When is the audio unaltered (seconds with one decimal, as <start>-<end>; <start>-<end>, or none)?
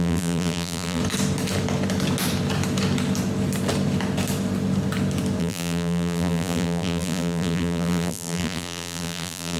1.0-5.4